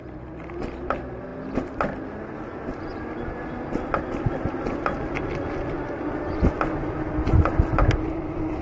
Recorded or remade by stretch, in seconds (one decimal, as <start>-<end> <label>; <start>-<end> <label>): 0.0-8.6 recorded